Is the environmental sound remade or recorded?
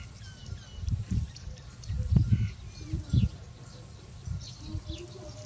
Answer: recorded